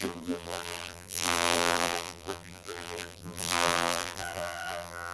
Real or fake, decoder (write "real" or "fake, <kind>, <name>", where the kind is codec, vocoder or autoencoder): fake, vocoder, BigVGAN v2